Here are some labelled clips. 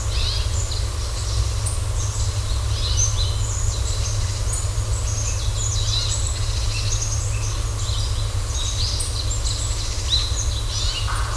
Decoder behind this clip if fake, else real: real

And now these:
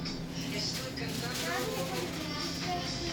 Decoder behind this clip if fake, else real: real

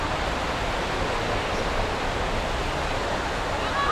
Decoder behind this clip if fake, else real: real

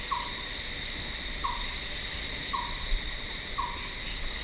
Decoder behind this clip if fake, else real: real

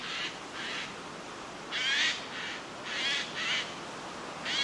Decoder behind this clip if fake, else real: real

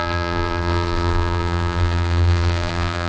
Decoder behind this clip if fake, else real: fake, vocoder, BigVGAN v2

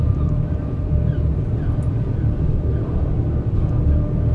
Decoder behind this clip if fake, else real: fake, vocoder, BigVGAN v2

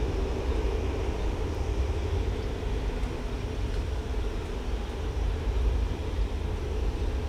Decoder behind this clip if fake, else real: fake, vocoder, BigVGAN v2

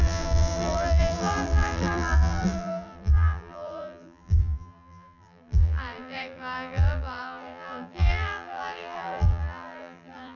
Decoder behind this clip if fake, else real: fake, vocoder, BigVGAN v2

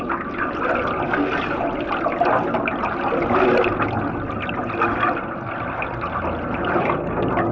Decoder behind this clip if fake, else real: real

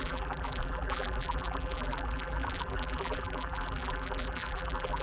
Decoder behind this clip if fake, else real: fake, vocoder, BigVGAN v2